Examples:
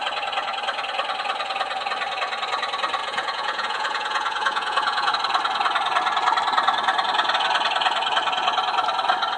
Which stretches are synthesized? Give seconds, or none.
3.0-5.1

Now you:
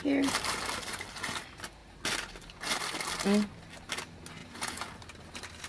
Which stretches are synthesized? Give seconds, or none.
4.4-4.9